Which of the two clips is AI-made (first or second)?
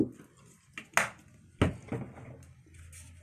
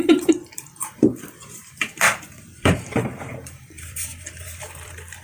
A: second